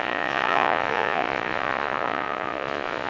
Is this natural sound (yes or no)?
no